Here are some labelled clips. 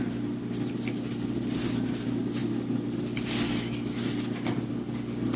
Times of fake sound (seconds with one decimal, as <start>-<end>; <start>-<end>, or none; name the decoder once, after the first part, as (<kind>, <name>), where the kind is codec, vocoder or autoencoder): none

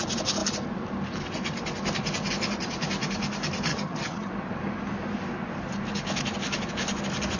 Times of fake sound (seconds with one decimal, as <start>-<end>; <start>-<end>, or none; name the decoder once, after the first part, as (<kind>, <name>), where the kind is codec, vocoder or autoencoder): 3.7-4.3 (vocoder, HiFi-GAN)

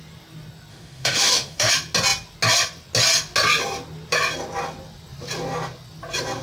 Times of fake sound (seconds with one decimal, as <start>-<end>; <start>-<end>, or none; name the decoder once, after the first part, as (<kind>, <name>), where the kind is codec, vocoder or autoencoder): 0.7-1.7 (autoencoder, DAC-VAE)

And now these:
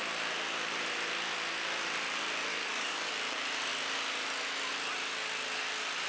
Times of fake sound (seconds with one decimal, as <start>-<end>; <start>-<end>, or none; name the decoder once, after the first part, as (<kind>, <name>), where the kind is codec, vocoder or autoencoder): 2.5-3.1 (codec, DAC)